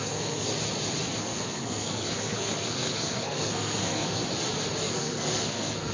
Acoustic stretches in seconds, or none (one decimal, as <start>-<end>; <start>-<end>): 0.5-1.2; 4.2-4.8